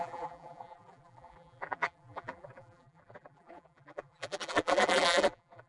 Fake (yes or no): yes